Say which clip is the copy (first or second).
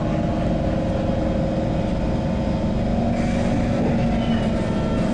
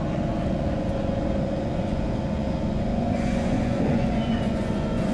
second